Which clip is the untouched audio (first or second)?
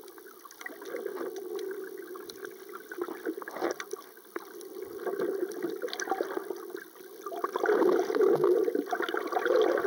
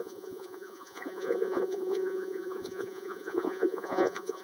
first